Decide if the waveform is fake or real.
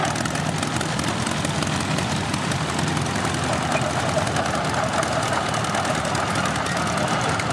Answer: real